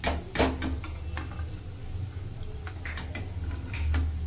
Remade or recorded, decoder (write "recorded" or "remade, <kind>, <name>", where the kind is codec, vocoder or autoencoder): recorded